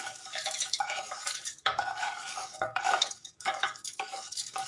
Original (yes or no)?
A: no